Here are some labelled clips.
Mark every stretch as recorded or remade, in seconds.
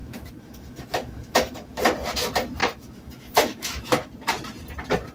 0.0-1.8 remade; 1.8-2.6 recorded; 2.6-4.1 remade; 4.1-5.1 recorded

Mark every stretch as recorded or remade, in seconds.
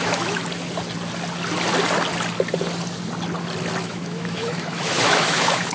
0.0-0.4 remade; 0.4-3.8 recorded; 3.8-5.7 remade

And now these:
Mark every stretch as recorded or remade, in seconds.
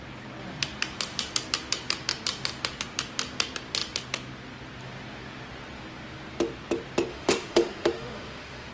0.0-7.1 recorded; 7.1-8.7 remade